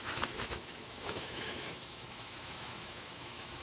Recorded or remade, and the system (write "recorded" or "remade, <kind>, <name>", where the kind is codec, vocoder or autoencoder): remade, autoencoder, DAC-VAE